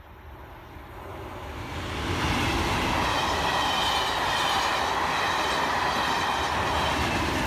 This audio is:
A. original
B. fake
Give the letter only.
A